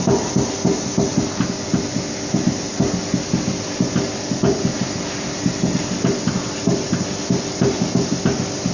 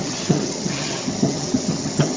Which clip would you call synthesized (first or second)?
second